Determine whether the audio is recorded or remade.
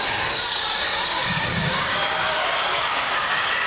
remade